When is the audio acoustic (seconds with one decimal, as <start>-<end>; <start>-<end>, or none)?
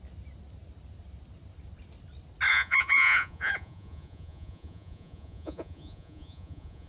0.0-2.5